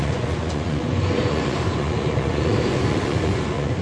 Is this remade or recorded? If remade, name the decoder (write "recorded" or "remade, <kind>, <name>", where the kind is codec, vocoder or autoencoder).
remade, vocoder, Vocos